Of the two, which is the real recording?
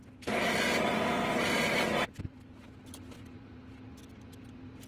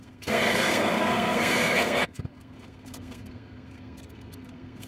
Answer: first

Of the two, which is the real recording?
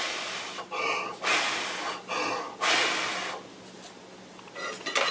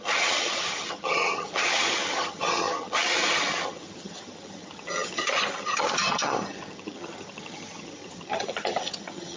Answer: first